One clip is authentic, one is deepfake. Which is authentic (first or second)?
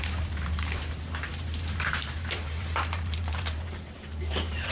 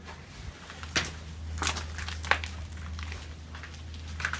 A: second